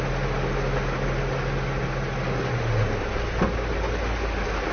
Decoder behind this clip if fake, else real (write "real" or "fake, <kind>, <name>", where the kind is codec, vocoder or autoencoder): real